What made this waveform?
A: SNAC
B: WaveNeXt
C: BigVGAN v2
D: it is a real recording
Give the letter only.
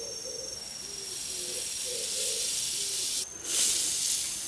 D